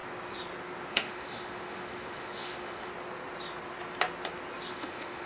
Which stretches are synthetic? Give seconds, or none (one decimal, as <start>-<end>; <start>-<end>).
0.9-2.9; 4.7-5.3